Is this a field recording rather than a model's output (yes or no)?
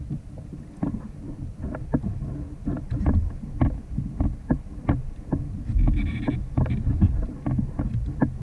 yes